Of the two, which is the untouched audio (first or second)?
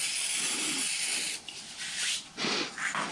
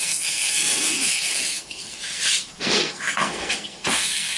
first